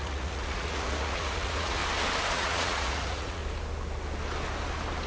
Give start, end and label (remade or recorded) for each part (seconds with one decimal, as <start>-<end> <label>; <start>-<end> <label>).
0.0-1.8 remade; 1.8-2.3 recorded; 2.3-3.4 remade; 3.4-5.1 recorded